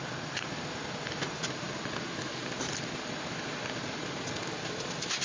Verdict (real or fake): real